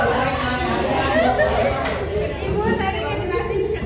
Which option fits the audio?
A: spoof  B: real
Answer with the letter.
B